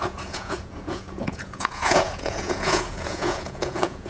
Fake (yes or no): yes